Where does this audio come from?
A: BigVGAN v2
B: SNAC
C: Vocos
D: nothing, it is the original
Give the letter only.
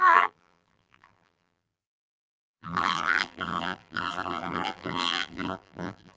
A